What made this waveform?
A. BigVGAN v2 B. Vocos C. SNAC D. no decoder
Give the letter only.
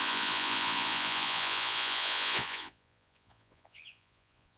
B